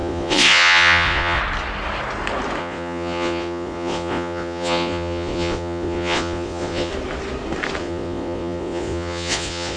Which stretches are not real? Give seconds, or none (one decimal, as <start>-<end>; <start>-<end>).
0.0-1.4; 2.6-6.9; 7.8-9.8